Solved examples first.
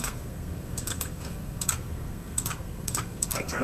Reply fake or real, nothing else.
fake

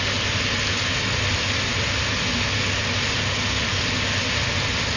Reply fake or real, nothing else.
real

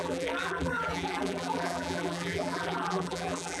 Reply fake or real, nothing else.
fake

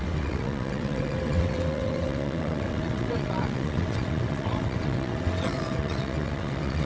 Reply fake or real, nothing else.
fake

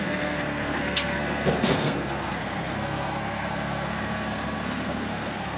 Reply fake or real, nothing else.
fake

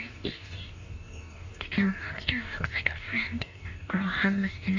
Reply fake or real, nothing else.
fake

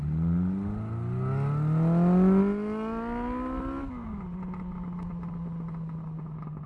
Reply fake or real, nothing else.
real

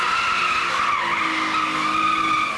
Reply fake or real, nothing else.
real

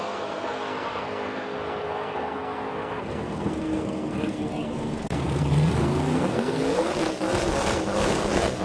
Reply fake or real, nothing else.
fake